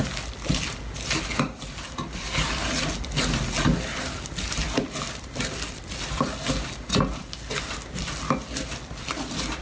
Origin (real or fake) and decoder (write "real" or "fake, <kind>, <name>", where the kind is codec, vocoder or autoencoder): real